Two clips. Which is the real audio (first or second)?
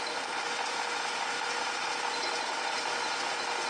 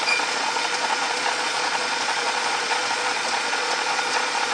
first